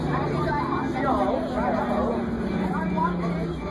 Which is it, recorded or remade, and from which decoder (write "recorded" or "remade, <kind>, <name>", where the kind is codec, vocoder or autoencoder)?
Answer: recorded